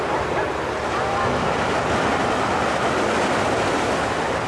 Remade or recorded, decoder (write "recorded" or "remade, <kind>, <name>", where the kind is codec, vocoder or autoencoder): recorded